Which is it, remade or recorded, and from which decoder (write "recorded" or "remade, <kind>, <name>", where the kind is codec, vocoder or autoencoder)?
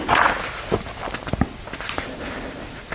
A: recorded